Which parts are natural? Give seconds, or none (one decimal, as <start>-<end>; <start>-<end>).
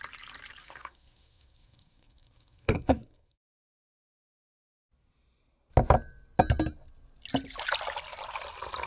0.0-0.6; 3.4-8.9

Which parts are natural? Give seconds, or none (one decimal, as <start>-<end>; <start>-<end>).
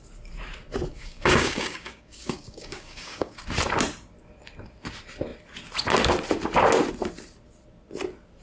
0.0-0.9; 3.4-8.4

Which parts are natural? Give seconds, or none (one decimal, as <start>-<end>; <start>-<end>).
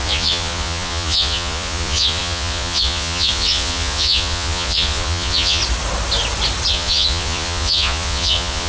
5.6-6.7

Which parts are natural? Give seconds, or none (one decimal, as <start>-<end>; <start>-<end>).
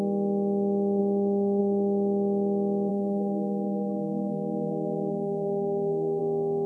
0.0-2.9; 6.2-6.7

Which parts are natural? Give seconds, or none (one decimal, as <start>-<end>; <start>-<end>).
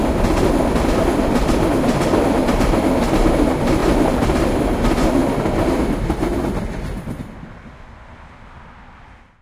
0.0-3.8; 4.5-9.4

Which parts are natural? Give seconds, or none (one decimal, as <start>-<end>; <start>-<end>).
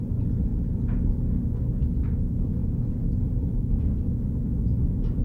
0.0-0.5; 1.1-2.6; 3.7-5.2